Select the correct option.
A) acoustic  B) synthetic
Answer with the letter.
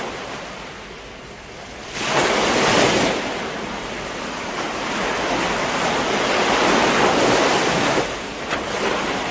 B